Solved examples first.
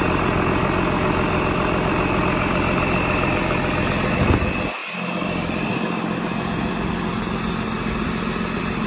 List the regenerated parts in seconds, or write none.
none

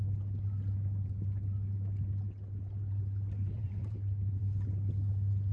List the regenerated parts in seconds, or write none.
3.4-4.4 (vocoder, BigVGAN v2)

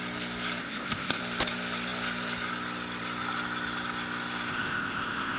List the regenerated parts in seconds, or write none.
0.6-1.2 (codec, ZipCodec); 4.5-5.4

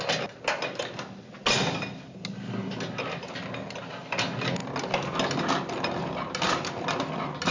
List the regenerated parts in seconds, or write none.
none

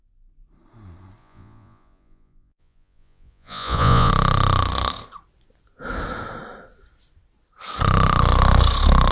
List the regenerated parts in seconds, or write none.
1.2-4.1 (vocoder, Vocos)

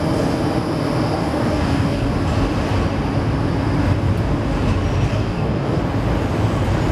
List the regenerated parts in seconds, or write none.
1.2-2.1 (codec, DAC); 5.1-5.8